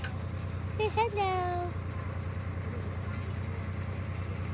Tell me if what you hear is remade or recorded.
recorded